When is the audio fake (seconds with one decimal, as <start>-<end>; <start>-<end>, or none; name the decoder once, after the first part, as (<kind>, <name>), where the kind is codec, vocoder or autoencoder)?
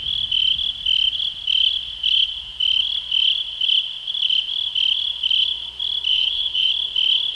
6.1-6.7 (vocoder, Vocos)